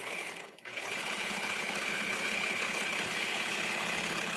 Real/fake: fake